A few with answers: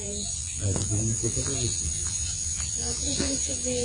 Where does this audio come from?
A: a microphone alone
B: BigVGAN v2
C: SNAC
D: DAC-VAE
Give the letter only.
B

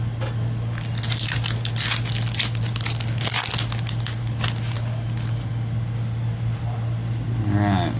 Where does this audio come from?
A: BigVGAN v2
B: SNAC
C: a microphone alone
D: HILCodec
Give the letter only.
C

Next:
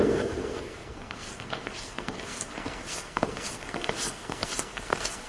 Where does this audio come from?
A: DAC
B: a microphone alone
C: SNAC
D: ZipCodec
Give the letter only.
C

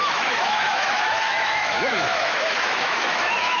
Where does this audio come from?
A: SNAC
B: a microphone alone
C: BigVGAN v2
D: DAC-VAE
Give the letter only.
D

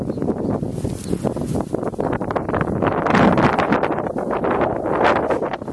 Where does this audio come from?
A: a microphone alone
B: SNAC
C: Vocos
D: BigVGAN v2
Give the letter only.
A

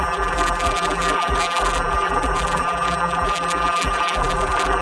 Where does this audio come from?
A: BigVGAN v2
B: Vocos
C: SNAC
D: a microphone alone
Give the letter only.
A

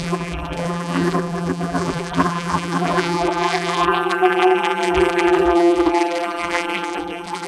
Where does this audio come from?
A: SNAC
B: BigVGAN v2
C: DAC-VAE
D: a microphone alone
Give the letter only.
B